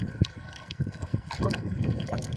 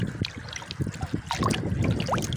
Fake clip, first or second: first